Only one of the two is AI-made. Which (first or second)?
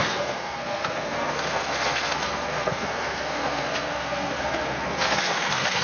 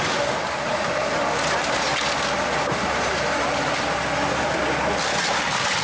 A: first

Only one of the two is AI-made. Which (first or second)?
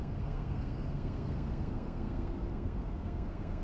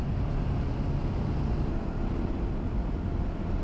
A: first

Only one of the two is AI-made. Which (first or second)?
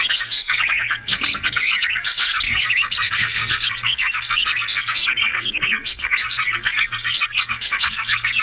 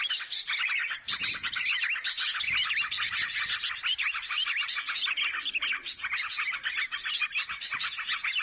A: first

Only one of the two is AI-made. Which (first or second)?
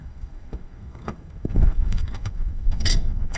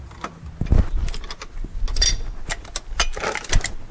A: first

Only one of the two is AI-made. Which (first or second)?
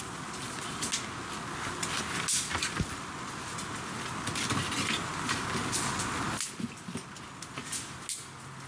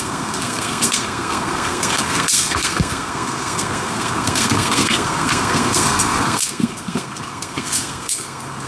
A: second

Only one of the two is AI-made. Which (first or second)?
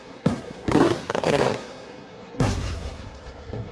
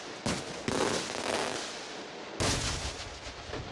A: first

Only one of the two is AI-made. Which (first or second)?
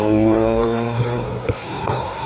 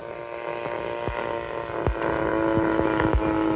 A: first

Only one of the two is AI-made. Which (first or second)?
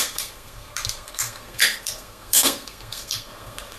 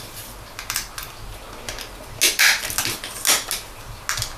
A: first